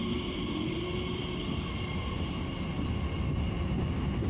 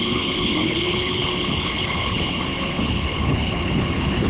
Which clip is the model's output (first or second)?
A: second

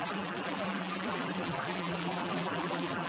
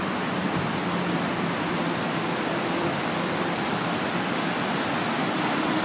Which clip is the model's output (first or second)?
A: first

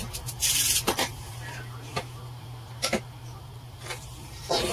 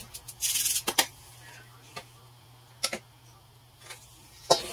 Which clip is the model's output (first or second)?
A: first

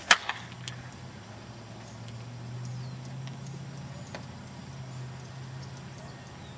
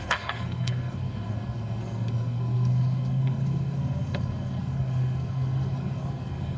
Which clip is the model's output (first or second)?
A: second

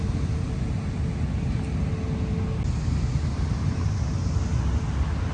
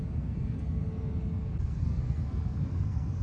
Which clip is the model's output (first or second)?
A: second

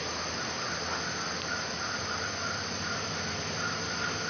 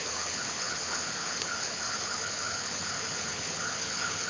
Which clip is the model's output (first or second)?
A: second